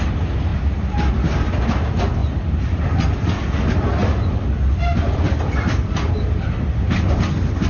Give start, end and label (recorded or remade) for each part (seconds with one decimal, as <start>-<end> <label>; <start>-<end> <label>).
0.0-2.2 recorded; 2.2-3.4 remade; 3.4-4.0 recorded; 4.0-6.1 remade; 6.1-7.7 recorded